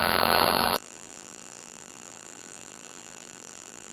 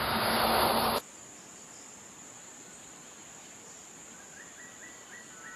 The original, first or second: second